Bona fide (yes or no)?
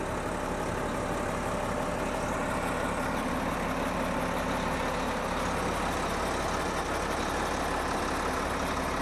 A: yes